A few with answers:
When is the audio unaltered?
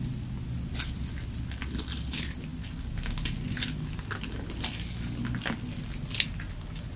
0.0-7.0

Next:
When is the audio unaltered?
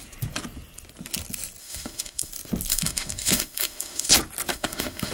0.0-1.6; 2.3-2.7; 4.1-4.5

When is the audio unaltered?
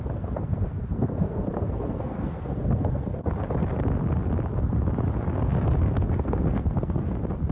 3.3-6.0; 7.1-7.5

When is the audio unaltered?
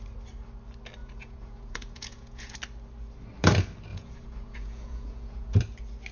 0.0-1.0; 2.5-3.9; 5.6-6.1